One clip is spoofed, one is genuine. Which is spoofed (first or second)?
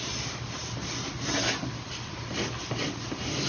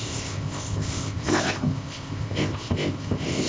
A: second